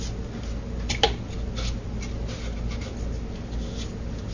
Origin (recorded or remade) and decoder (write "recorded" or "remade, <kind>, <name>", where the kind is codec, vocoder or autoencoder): recorded